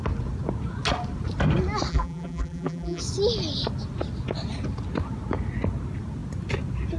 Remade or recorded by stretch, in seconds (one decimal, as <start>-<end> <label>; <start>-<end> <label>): 0.0-1.9 recorded; 1.9-3.0 remade; 3.0-7.0 recorded